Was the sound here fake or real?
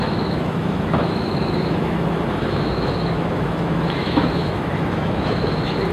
fake